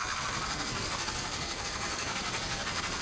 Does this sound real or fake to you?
fake